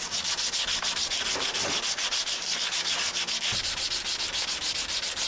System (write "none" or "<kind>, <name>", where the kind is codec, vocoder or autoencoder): none